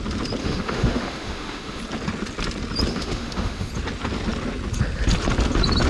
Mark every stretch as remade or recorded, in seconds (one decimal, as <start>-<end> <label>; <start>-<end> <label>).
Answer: 0.0-0.4 recorded; 0.4-1.8 remade; 1.8-2.9 recorded; 2.9-3.7 remade; 3.7-5.9 recorded